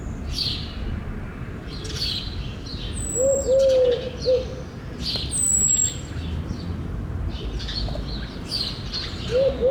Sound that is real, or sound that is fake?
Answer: real